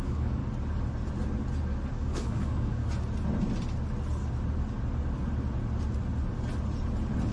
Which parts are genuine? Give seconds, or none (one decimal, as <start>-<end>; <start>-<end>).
0.4-1.9; 2.8-7.3